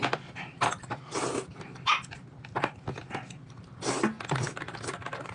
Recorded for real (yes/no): yes